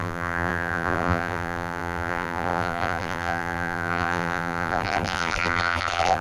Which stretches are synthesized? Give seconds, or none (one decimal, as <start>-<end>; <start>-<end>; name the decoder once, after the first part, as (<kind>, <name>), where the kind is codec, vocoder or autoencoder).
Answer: 0.0-6.2 (vocoder, BigVGAN v2)